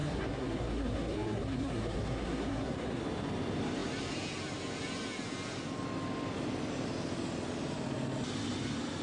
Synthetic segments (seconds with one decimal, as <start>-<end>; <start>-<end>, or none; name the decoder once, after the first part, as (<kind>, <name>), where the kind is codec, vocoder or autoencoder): 0.0-3.0 (codec, SNAC)